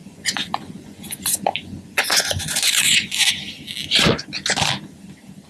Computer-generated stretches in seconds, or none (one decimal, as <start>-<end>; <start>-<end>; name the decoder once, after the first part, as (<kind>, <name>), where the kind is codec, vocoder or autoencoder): 0.0-3.3 (vocoder, Vocos)